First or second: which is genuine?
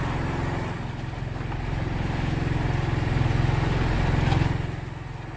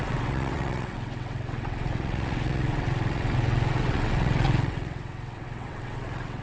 first